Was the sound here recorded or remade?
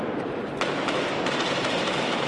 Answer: recorded